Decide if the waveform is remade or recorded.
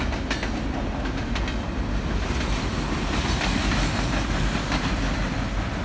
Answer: recorded